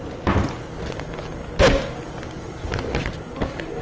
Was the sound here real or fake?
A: real